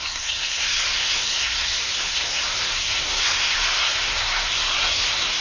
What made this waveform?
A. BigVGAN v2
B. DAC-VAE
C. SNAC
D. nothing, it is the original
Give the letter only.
C